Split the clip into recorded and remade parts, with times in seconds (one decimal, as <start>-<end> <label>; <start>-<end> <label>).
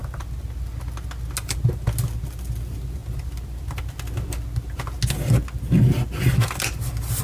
0.0-7.2 recorded